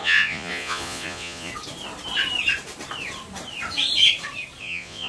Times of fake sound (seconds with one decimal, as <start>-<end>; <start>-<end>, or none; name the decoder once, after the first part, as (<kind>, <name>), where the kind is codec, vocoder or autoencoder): 0.0-1.5 (vocoder, Vocos); 4.6-5.1